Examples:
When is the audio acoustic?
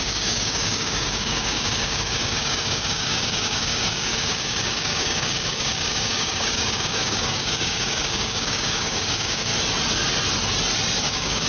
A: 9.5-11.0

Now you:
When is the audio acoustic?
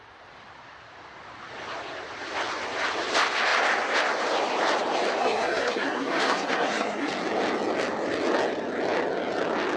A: 0.0-5.2; 7.1-9.8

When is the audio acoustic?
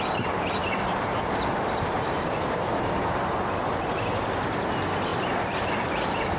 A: 0.0-0.6; 2.3-5.1; 5.6-6.4